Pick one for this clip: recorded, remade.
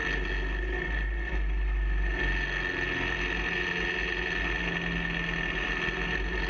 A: recorded